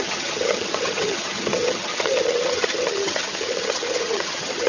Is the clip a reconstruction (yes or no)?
yes